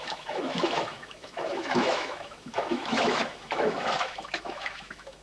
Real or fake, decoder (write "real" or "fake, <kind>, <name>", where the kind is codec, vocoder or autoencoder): fake, autoencoder, DAC-VAE